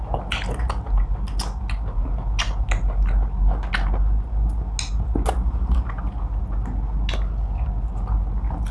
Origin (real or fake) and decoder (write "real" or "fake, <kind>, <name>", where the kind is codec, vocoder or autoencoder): real